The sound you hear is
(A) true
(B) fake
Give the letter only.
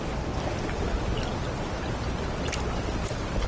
A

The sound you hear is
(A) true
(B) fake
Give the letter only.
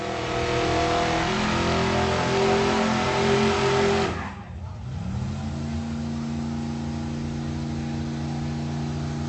A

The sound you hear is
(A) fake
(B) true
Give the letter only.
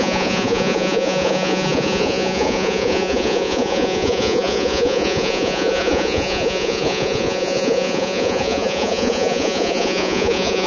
A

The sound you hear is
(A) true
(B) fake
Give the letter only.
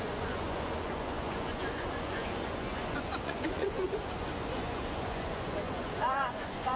B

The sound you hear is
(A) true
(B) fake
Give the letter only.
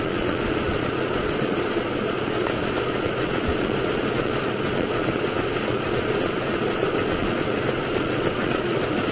B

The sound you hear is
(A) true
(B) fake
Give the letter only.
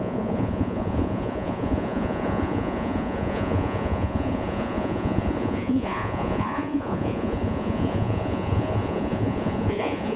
B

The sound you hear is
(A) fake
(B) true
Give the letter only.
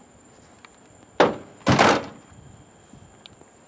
B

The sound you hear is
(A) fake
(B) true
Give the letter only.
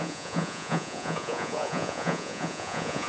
A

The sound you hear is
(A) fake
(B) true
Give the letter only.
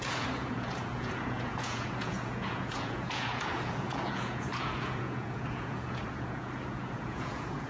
A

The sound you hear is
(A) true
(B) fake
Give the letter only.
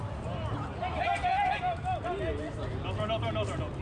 A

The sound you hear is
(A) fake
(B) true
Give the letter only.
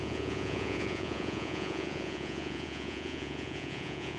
A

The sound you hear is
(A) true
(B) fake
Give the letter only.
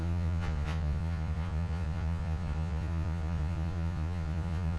B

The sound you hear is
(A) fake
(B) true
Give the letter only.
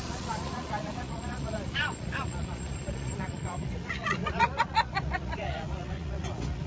A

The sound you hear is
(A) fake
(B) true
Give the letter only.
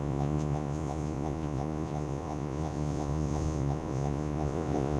A